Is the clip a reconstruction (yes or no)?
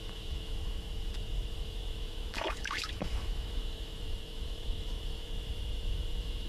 yes